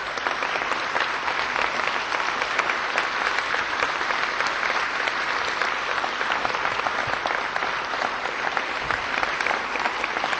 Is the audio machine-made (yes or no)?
yes